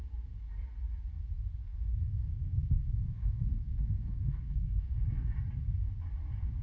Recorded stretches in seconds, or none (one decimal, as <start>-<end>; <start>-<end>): 0.0-1.6; 5.3-6.6